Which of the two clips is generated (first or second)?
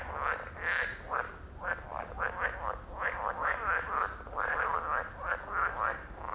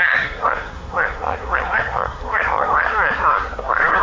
second